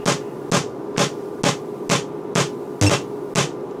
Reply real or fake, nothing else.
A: real